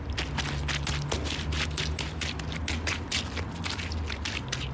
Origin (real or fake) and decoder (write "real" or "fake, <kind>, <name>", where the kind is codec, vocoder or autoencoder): real